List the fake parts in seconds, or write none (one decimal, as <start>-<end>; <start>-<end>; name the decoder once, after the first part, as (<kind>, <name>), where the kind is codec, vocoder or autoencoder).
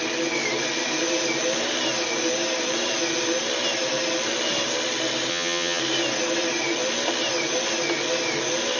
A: 5.3-5.8 (vocoder, HiFi-GAN)